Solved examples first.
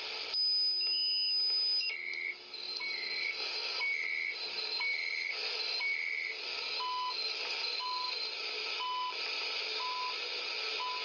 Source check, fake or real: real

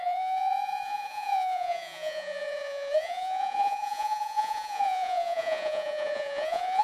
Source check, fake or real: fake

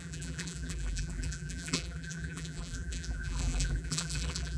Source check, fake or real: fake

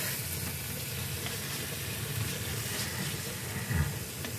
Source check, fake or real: real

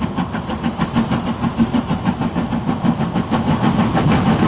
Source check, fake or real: real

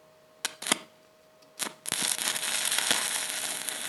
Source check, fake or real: real